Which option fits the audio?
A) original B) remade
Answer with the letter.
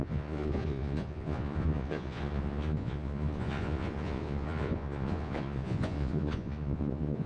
B